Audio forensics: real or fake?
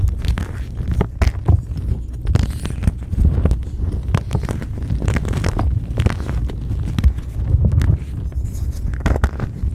real